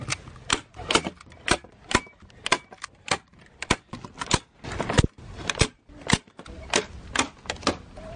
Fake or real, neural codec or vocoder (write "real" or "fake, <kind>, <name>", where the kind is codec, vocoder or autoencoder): real